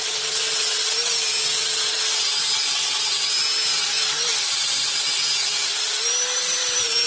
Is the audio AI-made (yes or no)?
no